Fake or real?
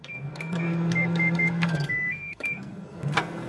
fake